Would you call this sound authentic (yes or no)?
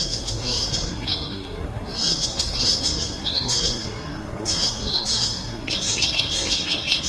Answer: no